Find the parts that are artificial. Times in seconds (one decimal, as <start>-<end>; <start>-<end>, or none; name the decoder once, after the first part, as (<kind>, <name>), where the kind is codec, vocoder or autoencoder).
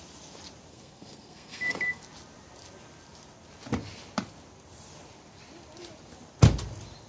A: 0.7-2.0 (codec, SNAC)